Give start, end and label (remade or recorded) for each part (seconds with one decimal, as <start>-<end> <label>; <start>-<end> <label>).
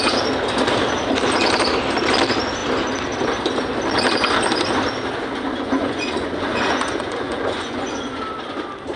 0.0-5.5 recorded; 5.5-8.2 remade; 8.2-9.0 recorded